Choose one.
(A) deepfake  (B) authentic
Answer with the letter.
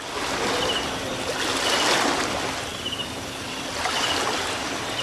B